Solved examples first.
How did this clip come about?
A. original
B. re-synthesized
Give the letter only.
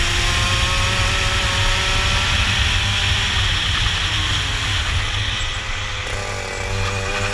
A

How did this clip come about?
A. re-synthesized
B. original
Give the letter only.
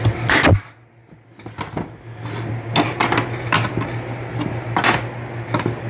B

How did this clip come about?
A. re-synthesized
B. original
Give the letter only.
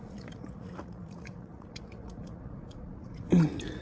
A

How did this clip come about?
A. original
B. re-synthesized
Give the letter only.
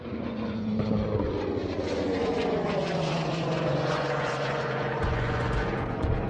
B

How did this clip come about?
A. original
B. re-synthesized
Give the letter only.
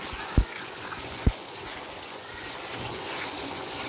B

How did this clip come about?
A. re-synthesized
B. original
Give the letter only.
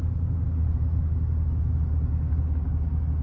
B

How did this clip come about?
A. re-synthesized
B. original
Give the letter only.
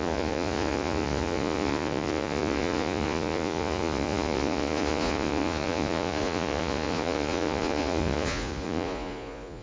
A